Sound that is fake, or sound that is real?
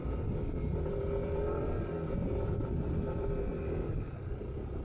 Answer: fake